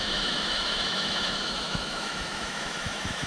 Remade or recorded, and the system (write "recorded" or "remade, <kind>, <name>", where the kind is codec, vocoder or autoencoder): remade, autoencoder, DAC-VAE